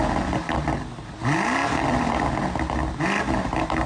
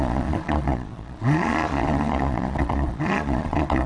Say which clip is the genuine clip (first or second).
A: first